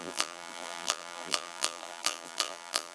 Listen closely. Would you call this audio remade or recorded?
remade